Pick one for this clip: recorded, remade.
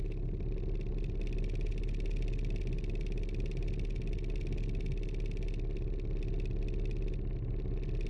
recorded